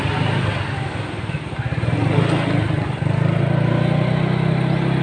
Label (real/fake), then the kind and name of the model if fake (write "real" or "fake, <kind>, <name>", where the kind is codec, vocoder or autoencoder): real